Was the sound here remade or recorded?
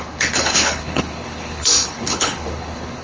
remade